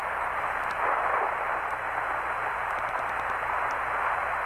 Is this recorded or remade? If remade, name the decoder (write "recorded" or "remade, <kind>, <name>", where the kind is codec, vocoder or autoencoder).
remade, vocoder, BigVGAN v2